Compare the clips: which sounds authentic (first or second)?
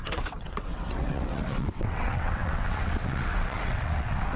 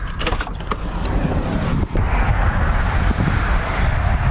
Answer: second